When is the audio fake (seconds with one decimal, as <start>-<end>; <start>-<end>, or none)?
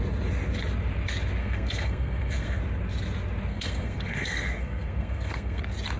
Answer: 1.4-2.6; 3.5-5.6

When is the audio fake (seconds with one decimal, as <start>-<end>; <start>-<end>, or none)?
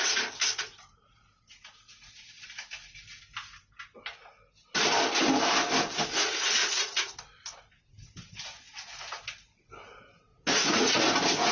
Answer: 6.6-7.2; 10.3-11.0